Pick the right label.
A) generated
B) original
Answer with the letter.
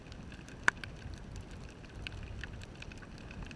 B